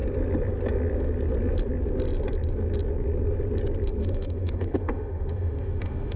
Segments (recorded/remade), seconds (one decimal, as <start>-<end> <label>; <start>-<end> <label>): 0.0-4.0 recorded; 4.0-6.2 remade